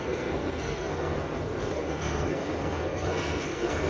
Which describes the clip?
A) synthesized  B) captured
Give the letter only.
A